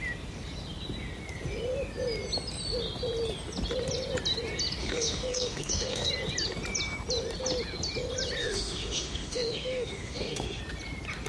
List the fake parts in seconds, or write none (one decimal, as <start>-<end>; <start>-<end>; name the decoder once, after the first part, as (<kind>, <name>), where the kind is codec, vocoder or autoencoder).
4.8-6.1 (autoencoder, DAC-VAE); 8.4-10.6